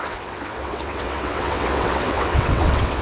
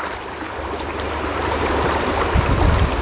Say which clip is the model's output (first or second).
first